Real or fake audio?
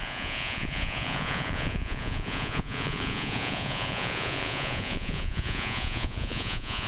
fake